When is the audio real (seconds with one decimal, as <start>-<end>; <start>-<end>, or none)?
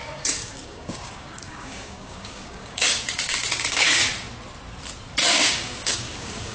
4.0-5.3